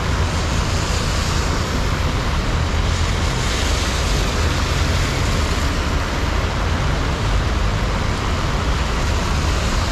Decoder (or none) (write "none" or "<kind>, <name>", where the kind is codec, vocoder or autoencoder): none